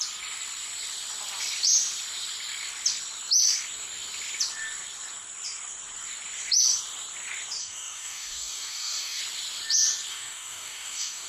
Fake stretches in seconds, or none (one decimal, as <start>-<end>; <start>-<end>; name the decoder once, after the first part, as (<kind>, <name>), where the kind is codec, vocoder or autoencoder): 7.6-9.2 (codec, DAC); 10.1-11.3